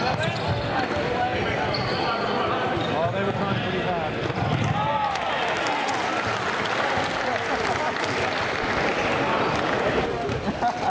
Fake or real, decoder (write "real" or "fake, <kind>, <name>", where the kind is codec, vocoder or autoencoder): real